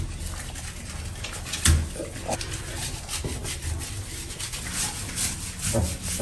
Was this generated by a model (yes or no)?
no